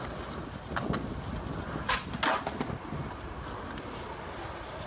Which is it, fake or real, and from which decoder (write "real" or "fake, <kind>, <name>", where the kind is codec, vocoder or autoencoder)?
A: real